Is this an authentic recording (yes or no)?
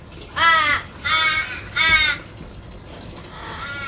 yes